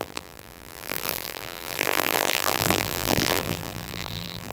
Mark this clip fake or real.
fake